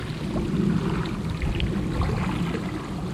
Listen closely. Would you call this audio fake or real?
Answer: real